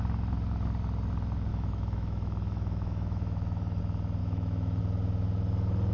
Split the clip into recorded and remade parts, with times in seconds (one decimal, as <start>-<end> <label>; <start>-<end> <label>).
0.0-1.5 recorded; 1.5-3.8 remade; 3.8-4.2 recorded; 4.2-4.8 remade; 4.8-5.9 recorded